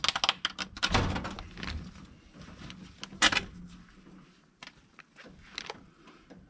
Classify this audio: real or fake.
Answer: real